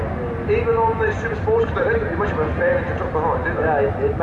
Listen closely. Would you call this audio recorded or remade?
recorded